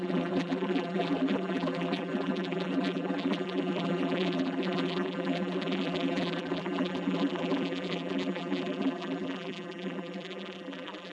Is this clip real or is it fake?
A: fake